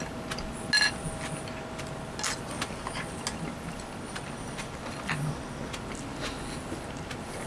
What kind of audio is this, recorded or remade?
recorded